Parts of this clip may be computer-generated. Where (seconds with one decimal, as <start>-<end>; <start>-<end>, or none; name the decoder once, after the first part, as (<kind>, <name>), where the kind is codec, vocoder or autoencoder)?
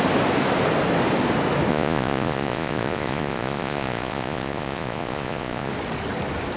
1.7-5.7 (vocoder, Vocos)